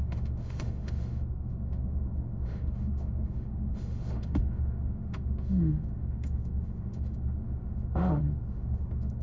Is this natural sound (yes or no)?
no